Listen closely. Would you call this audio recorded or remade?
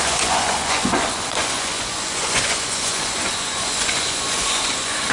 remade